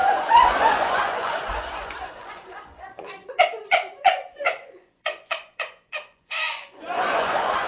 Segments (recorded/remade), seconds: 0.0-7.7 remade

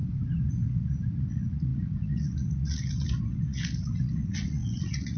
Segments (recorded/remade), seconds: 0.0-0.5 recorded; 0.5-5.2 remade